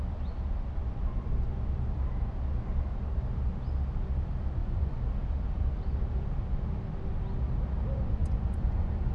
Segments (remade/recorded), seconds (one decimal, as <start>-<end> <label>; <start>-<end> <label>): 0.0-4.6 recorded; 4.6-5.1 remade; 5.1-8.2 recorded; 8.2-9.1 remade